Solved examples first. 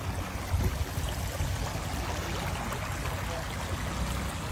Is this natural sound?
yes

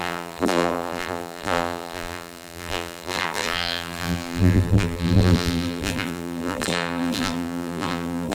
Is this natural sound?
no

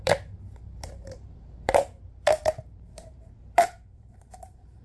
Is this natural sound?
no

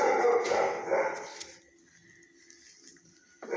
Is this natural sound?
yes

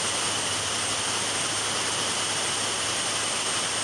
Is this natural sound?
no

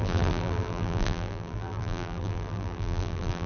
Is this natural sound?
no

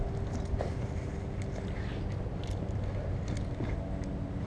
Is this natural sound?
yes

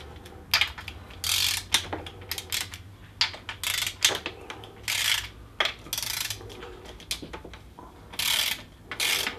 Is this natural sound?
yes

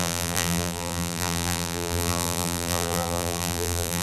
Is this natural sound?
no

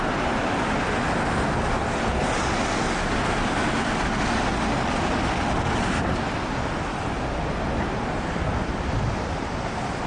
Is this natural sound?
yes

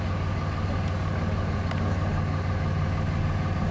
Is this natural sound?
yes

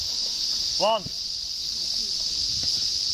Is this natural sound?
yes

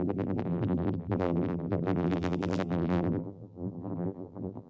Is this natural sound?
no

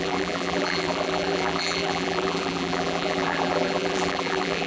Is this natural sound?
no